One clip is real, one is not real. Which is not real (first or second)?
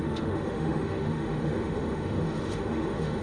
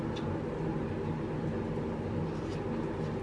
first